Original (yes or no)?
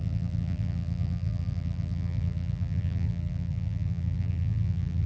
no